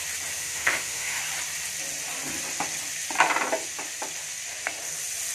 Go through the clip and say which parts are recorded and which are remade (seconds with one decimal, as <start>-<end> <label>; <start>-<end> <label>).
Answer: 0.0-0.4 recorded; 0.4-1.2 remade; 1.2-5.3 recorded